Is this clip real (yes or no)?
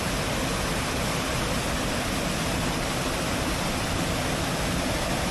yes